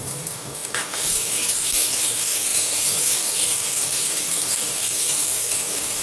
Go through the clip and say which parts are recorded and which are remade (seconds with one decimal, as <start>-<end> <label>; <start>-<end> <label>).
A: 0.0-6.0 remade

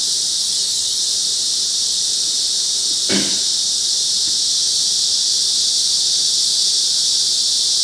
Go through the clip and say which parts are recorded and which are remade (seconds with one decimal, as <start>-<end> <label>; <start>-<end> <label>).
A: 0.0-0.4 recorded; 0.4-1.0 remade; 1.0-7.8 recorded

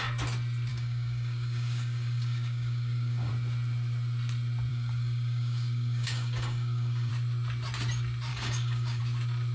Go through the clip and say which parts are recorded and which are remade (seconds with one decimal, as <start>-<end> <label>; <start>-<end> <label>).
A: 0.0-0.7 recorded; 0.7-3.3 remade; 3.3-4.7 recorded; 4.7-7.1 remade; 7.1-8.3 recorded; 8.3-9.0 remade; 9.0-9.5 recorded

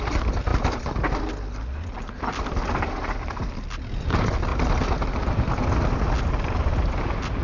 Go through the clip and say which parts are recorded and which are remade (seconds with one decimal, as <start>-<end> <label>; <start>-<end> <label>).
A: 0.0-7.4 recorded

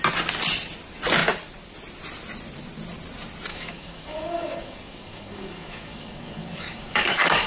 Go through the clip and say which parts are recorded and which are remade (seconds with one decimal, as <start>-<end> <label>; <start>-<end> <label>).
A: 0.0-3.5 recorded; 3.5-7.5 remade